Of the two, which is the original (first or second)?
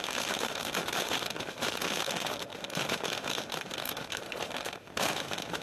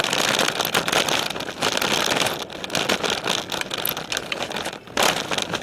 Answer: second